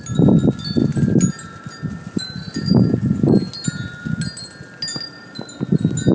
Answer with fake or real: real